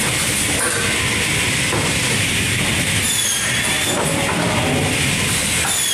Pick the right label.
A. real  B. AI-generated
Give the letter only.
A